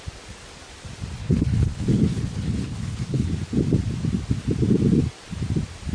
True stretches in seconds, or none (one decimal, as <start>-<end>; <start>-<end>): 0.0-1.2; 3.3-5.9